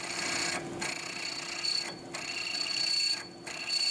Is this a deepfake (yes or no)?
no